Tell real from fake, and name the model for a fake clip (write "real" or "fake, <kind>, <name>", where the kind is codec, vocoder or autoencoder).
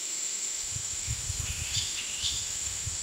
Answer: fake, autoencoder, DAC-VAE